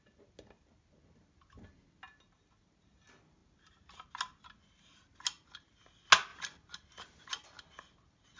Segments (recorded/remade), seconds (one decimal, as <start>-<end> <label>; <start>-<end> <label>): 0.0-8.4 recorded